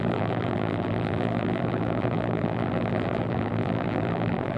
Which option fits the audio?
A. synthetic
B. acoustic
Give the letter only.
A